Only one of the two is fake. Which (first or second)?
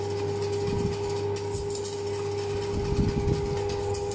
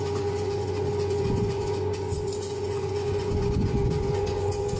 second